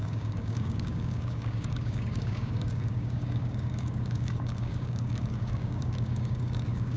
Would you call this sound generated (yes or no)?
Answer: yes